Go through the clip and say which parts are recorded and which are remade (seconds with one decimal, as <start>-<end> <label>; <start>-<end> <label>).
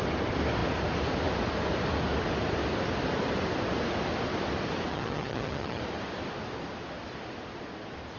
0.0-4.9 recorded; 4.9-5.8 remade; 5.8-8.2 recorded